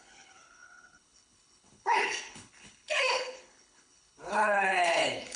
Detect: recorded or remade remade